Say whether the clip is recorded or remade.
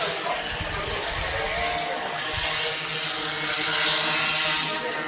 recorded